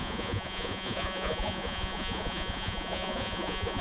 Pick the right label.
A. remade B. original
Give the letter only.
A